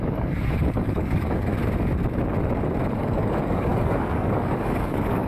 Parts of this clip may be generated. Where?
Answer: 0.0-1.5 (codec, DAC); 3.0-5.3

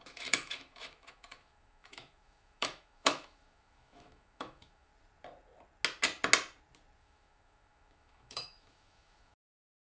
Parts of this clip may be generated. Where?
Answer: 0.0-4.9 (autoencoder, DAC-VAE); 7.0-10.0

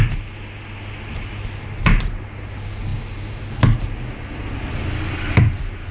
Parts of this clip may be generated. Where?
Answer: none